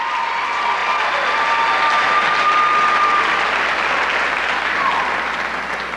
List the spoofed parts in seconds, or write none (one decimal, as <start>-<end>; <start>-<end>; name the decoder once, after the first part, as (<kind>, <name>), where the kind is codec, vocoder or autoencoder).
none